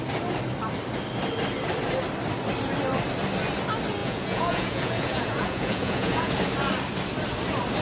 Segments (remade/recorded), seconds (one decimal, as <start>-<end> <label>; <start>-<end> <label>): 0.0-4.0 recorded; 4.0-6.3 remade; 6.3-7.8 recorded